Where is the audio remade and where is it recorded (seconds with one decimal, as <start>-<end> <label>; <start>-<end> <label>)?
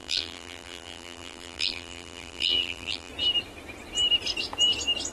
0.0-3.1 remade; 3.1-5.1 recorded